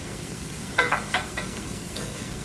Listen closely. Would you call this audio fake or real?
fake